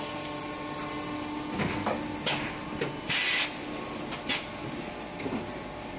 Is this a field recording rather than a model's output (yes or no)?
yes